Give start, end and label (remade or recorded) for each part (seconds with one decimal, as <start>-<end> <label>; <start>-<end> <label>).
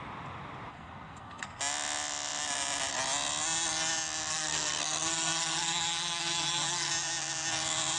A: 0.0-0.7 recorded; 0.7-1.6 remade; 1.6-4.3 recorded; 4.3-6.9 remade; 6.9-8.0 recorded